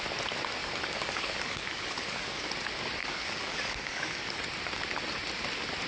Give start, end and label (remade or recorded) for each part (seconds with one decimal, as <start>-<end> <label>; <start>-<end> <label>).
0.0-0.6 recorded; 0.6-2.5 remade; 2.5-3.0 recorded; 3.0-4.4 remade; 4.4-5.9 recorded